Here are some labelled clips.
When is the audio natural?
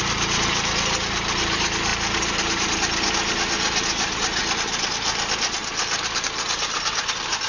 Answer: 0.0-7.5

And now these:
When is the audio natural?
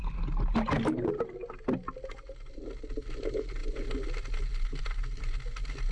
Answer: 0.0-5.9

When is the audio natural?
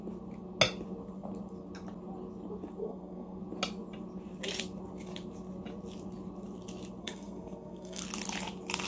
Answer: 0.0-2.8; 3.4-7.0; 8.0-8.9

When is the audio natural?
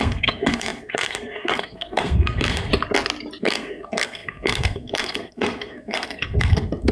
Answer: 2.7-3.4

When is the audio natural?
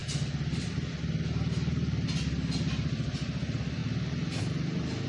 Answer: 0.0-5.1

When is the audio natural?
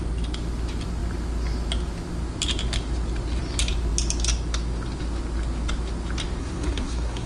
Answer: 0.0-6.4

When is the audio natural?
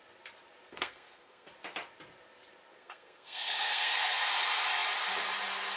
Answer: 0.0-0.7; 1.5-2.7; 4.3-5.8